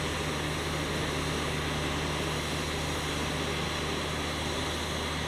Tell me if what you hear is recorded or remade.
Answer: recorded